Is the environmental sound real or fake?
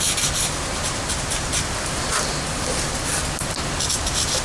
real